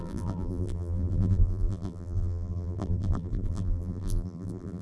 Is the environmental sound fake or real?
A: fake